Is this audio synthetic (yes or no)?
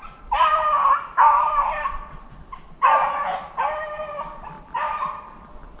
no